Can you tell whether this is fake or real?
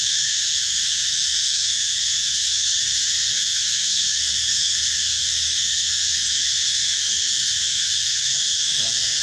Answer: fake